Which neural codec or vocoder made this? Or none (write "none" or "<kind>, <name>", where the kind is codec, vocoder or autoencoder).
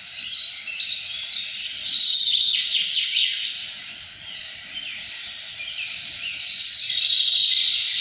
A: vocoder, BigVGAN v2